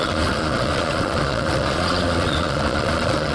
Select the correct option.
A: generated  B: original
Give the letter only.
A